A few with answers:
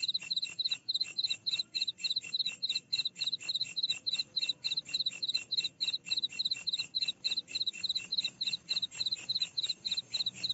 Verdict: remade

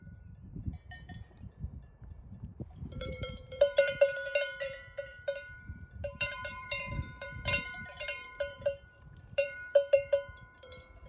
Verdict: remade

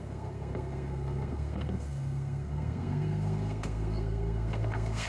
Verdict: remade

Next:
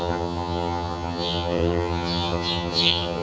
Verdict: remade